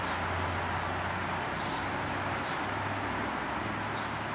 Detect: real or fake real